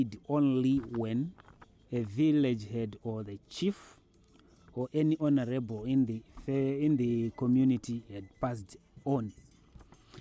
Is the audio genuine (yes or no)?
yes